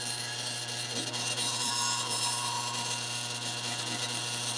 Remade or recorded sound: remade